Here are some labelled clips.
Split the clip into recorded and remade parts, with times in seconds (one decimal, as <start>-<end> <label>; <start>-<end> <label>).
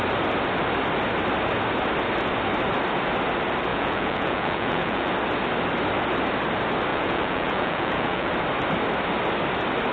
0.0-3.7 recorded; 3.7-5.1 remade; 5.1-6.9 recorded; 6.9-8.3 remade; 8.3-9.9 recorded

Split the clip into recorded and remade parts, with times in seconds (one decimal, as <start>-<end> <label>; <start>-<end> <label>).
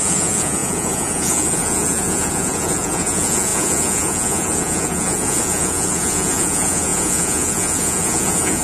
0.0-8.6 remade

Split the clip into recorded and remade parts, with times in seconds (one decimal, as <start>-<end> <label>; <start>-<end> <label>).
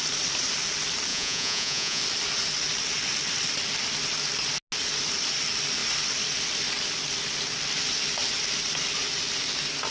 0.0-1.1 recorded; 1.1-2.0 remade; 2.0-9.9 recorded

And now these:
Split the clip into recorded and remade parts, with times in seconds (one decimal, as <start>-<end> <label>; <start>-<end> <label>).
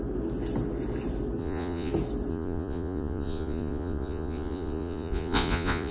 0.0-1.4 recorded; 1.4-1.9 remade; 1.9-2.3 recorded; 2.3-5.9 remade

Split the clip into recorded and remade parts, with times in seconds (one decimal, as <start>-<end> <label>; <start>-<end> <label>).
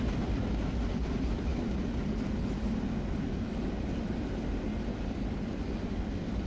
0.0-6.5 recorded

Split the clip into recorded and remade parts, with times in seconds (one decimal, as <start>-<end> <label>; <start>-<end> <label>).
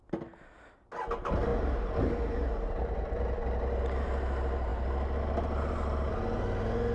0.0-6.9 recorded